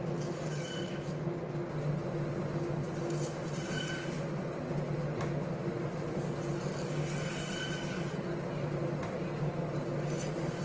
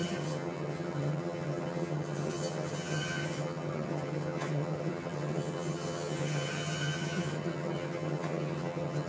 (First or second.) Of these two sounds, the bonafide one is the first